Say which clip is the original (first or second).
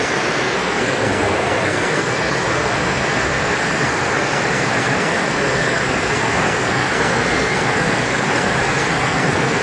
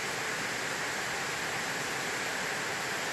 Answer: second